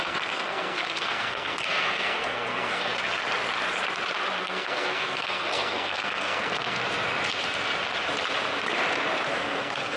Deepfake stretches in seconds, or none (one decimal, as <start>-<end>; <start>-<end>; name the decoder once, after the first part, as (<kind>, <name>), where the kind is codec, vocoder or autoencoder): 0.0-2.9 (codec, SNAC); 4.4-6.8; 9.3-10.0